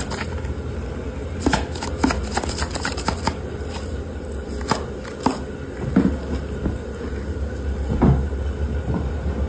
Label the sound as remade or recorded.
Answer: recorded